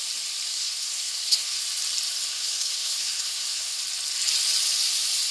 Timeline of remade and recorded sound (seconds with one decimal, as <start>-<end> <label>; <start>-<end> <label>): 0.0-0.5 recorded; 0.5-1.6 remade; 1.6-2.3 recorded; 2.3-3.8 remade; 3.8-5.3 recorded